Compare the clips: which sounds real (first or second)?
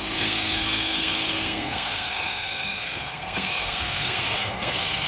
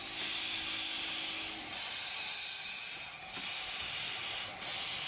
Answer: second